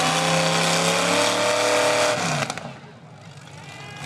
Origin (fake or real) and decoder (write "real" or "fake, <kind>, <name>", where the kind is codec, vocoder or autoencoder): real